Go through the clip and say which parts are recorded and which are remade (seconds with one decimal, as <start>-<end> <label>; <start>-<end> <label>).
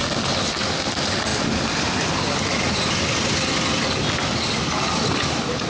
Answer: 0.0-5.7 recorded